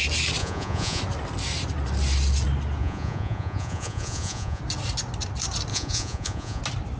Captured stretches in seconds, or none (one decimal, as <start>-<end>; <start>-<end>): 0.0-0.4; 1.0-2.8; 4.6-5.7; 6.6-7.0